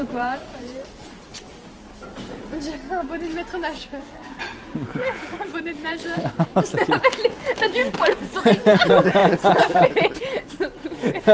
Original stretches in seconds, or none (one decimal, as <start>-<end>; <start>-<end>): 1.3-4.7; 7.8-8.5